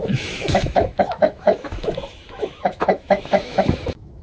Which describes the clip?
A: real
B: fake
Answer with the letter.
B